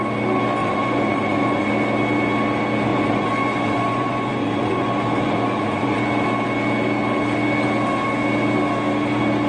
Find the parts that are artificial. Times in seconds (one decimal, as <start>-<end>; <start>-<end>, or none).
0.6-1.7; 2.9-6.0